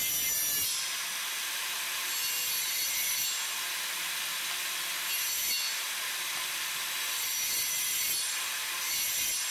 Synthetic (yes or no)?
no